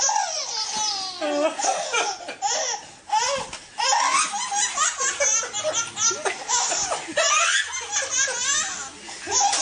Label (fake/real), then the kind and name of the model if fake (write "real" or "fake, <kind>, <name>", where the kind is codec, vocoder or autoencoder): real